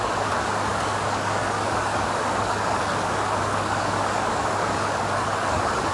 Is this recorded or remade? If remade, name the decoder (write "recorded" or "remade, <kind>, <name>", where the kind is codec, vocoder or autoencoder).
remade, codec, DAC